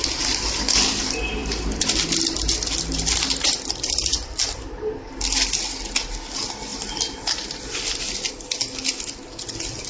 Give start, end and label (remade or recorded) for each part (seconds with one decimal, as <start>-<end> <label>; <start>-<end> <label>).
0.0-9.9 recorded